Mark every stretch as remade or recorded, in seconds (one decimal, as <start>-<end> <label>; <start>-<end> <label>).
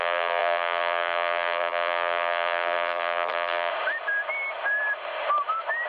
0.0-3.7 remade; 3.7-5.9 recorded